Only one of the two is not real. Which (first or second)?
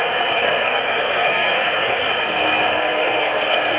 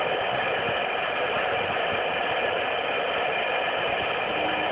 first